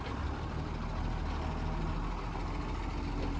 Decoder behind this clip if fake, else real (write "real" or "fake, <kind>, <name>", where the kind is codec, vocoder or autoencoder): real